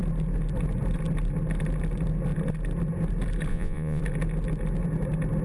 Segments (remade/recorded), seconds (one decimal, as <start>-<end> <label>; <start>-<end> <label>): 0.0-3.5 recorded; 3.5-4.0 remade; 4.0-5.4 recorded